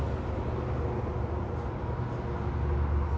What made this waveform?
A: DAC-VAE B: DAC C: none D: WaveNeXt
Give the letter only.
C